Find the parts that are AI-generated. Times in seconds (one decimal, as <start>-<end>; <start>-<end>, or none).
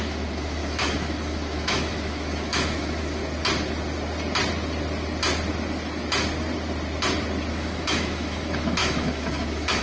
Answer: 0.0-3.2; 7.5-9.8